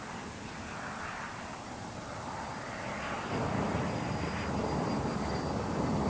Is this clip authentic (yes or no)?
yes